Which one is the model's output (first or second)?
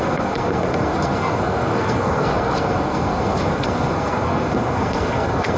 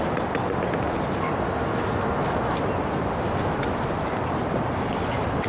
first